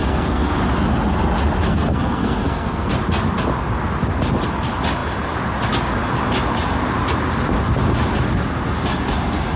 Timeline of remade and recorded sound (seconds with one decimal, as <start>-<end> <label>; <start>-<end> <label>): 0.0-0.6 remade; 0.6-1.6 recorded; 1.6-2.9 remade; 2.9-9.6 recorded